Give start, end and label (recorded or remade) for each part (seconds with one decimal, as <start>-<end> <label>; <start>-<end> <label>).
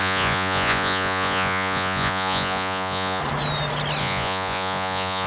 0.0-3.2 remade; 3.2-4.0 recorded; 4.0-5.3 remade